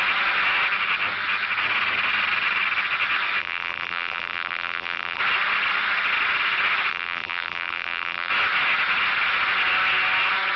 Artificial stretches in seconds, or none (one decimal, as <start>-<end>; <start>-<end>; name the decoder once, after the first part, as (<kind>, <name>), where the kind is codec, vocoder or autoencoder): 3.4-5.2 (vocoder, BigVGAN v2); 6.9-8.3